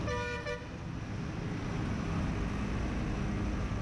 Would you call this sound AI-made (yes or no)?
no